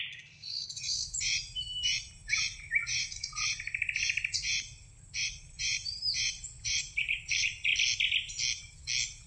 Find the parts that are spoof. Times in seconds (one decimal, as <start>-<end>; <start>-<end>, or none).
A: 0.0-7.7